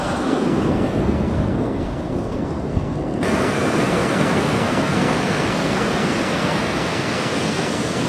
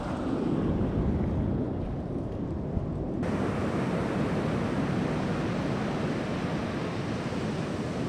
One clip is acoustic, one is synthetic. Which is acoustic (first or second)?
second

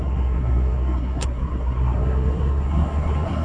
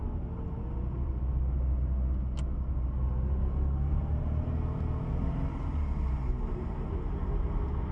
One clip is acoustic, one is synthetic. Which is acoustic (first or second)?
second